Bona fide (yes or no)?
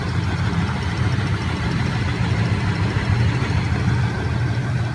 yes